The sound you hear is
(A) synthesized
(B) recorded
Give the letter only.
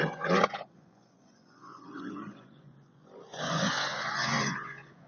A